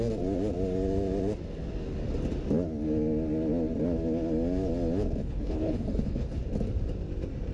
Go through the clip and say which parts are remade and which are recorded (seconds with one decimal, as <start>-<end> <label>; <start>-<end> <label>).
0.0-5.2 recorded; 5.2-6.4 remade; 6.4-7.5 recorded